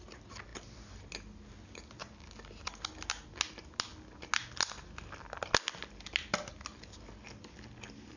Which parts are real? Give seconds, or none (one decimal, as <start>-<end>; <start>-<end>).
0.0-8.2